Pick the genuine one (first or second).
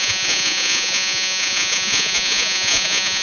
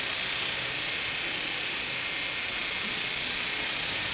second